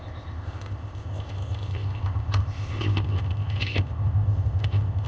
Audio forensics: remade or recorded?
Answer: remade